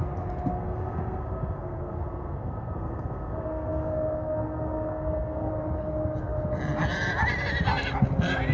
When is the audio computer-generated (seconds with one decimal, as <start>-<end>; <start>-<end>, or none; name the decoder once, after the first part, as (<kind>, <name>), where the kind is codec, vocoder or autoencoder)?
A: 0.5-5.5 (codec, SNAC)